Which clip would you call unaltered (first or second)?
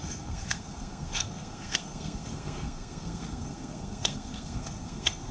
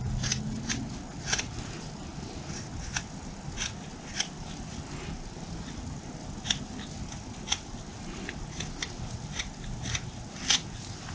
second